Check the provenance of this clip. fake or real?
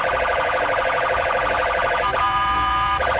fake